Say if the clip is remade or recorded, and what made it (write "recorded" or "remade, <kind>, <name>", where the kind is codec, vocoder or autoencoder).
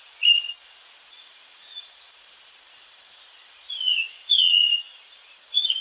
remade, vocoder, Vocos